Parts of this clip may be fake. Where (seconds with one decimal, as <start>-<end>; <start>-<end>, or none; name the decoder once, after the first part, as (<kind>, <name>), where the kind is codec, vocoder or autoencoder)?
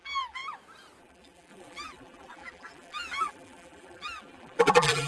0.0-0.4 (vocoder, BigVGAN v2); 1.0-5.1